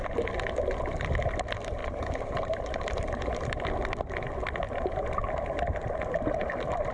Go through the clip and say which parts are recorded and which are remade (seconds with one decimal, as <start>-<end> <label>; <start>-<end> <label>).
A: 0.0-1.8 recorded; 1.8-3.6 remade; 3.6-6.9 recorded